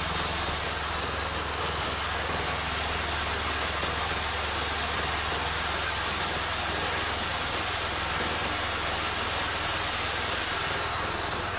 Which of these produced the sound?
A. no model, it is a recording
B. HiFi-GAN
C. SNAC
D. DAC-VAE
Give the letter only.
A